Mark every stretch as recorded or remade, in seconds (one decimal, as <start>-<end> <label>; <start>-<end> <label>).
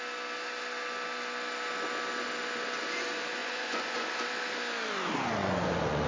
0.0-3.4 recorded; 3.4-4.1 remade; 4.1-5.4 recorded; 5.4-6.1 remade